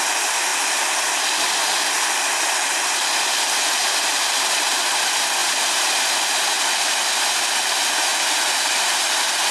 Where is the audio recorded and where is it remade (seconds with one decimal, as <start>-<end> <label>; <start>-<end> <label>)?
0.0-9.5 recorded